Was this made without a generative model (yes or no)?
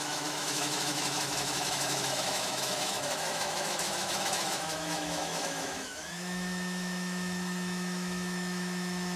no